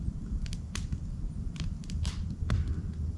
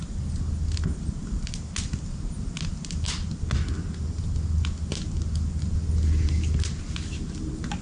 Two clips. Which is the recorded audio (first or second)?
second